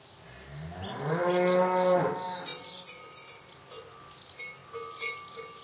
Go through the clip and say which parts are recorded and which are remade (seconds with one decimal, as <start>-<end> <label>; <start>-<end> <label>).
0.0-5.6 recorded